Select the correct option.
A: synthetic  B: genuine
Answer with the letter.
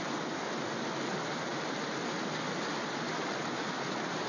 B